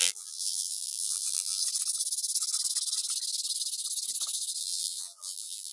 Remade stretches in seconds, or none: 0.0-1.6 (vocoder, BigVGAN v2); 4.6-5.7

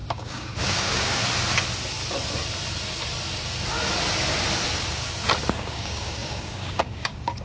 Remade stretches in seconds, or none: 0.0-1.2 (codec, DAC); 5.6-7.4

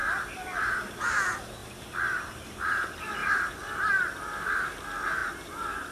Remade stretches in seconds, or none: 1.6-2.4 (vocoder, BigVGAN v2); 3.2-3.9